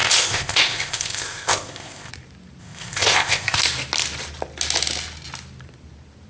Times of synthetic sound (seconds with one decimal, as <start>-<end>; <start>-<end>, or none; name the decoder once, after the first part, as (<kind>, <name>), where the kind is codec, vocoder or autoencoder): 0.0-2.1 (codec, ZipCodec); 2.6-3.6